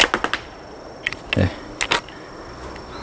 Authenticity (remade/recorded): recorded